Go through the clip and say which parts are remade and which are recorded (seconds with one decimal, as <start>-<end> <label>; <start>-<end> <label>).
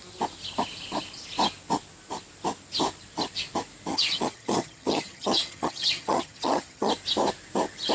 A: 0.0-3.9 recorded; 3.9-6.9 remade; 6.9-7.9 recorded